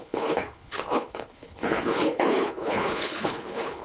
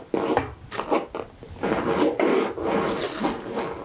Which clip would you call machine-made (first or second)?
first